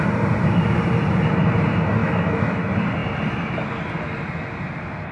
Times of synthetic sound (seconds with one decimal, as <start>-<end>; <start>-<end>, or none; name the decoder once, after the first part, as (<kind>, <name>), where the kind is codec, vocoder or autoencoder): 2.0-2.6 (autoencoder, DAC-VAE)